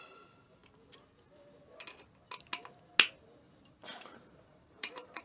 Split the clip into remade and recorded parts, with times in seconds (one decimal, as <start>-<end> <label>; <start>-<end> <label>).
0.0-0.6 remade; 0.6-3.7 recorded; 3.7-5.2 remade